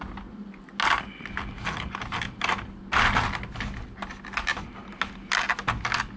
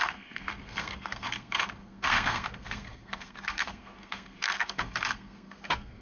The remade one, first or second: second